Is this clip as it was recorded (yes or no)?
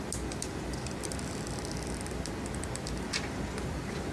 yes